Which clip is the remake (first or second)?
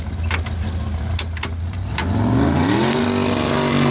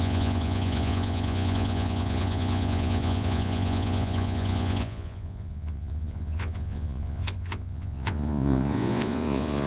second